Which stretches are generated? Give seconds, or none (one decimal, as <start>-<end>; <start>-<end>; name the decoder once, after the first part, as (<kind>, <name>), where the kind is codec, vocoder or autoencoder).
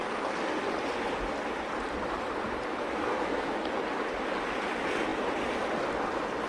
2.7-3.7 (autoencoder, DAC-VAE)